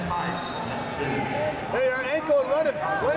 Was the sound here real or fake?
real